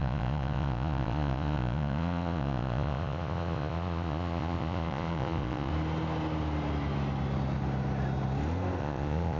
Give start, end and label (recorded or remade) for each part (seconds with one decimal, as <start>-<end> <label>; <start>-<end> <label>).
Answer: 0.0-5.7 remade; 5.7-8.8 recorded; 8.8-9.4 remade